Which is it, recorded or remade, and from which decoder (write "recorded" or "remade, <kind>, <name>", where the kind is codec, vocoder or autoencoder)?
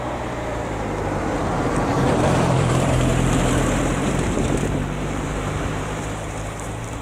remade, vocoder, BigVGAN v2